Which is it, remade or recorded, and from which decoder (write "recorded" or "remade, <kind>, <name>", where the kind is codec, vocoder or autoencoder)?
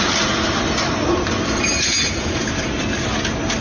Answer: recorded